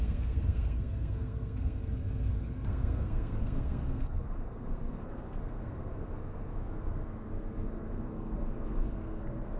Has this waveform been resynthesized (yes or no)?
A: yes